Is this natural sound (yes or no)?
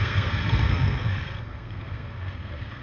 no